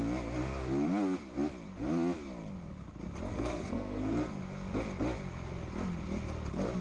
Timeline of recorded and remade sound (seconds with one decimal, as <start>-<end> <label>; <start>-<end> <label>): 0.0-3.3 recorded; 3.3-4.4 remade; 4.4-6.8 recorded

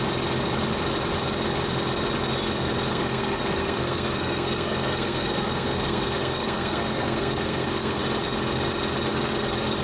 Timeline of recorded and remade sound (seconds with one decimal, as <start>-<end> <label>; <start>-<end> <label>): 0.0-2.9 recorded; 2.9-8.0 remade; 8.0-9.8 recorded

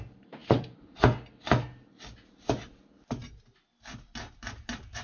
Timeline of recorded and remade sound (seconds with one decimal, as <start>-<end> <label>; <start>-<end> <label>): 0.0-5.0 recorded

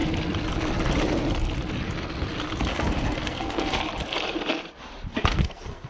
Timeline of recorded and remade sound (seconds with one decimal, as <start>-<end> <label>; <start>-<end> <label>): 0.0-2.7 recorded; 2.7-3.8 remade; 3.8-5.1 recorded; 5.1-5.9 remade

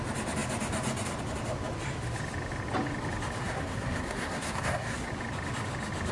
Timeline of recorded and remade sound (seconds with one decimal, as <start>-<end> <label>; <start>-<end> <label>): 0.0-3.4 recorded; 3.4-5.1 remade; 5.1-6.1 recorded

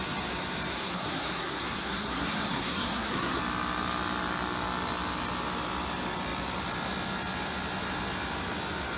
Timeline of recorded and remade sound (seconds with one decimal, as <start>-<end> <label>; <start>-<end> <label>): 0.0-0.7 recorded; 0.7-3.4 remade; 3.4-9.0 recorded

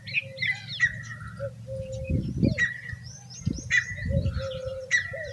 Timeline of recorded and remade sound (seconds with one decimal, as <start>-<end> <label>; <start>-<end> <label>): 0.0-5.3 recorded

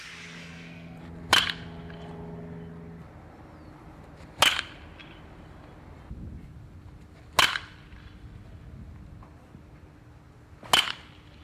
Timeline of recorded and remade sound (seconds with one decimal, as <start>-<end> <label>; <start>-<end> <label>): 0.0-0.4 recorded; 0.4-1.0 remade; 1.0-11.4 recorded